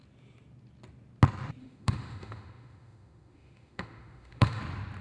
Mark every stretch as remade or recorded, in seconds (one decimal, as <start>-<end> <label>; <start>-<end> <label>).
0.0-1.6 recorded; 1.6-4.6 remade; 4.6-5.0 recorded